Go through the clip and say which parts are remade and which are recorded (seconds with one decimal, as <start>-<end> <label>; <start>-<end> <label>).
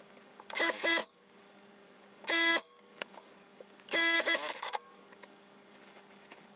0.0-6.6 remade